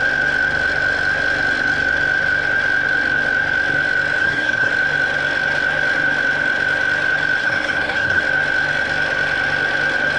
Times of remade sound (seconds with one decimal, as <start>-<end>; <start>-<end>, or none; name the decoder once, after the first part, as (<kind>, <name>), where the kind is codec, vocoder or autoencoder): 4.2-4.7 (codec, SNAC); 7.4-8.2